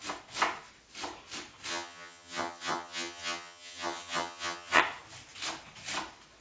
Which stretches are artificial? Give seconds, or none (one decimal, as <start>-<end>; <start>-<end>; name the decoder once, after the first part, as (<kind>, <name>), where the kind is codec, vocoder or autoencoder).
1.7-4.8 (vocoder, HiFi-GAN)